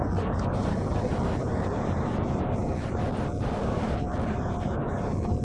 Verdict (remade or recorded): remade